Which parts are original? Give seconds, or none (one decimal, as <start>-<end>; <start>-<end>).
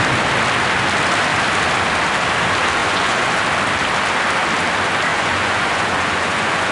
0.0-2.8; 3.4-5.1